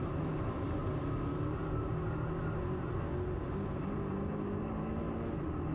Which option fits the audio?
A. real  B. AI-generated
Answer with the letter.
A